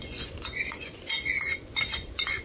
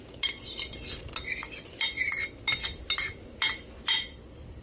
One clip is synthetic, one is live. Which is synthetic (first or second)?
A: first